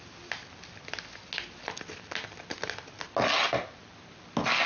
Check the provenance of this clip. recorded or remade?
recorded